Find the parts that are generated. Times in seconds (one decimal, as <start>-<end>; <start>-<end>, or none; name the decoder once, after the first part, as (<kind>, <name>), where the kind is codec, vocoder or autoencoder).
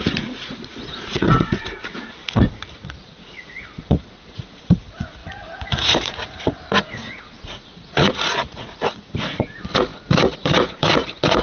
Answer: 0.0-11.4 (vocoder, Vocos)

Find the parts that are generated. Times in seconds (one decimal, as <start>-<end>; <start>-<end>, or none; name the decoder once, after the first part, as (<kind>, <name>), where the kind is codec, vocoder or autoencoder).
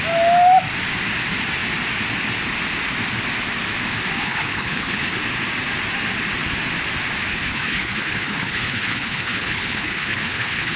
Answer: 4.2-5.2 (codec, HILCodec); 7.3-10.8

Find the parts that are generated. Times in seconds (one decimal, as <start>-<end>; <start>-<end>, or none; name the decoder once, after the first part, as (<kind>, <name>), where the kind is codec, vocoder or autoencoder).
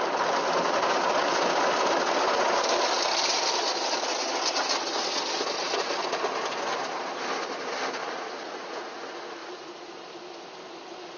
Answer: 8.0-9.0 (vocoder, Vocos); 9.4-9.9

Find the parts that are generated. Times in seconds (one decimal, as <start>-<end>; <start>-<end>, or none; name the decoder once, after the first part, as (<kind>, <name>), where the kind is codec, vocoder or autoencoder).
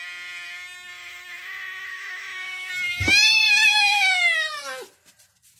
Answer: 1.9-2.7 (autoencoder, DAC-VAE)